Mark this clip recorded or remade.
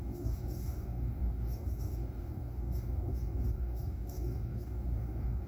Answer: remade